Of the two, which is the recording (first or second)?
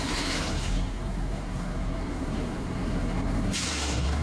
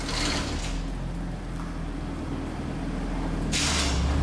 second